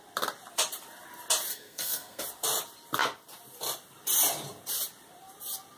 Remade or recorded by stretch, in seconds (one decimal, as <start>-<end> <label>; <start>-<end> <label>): 0.0-1.5 recorded; 1.5-2.2 remade; 2.2-5.8 recorded